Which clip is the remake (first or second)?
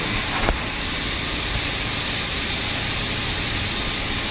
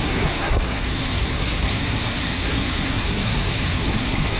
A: second